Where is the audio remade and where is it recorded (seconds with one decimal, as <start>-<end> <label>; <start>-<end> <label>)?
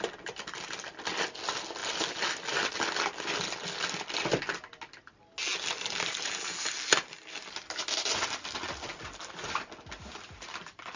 0.0-11.0 recorded